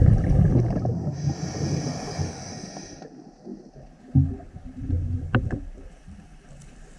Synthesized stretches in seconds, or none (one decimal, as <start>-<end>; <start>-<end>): 2.1-2.7